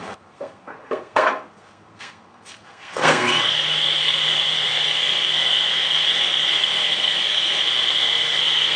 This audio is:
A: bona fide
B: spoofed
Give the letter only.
B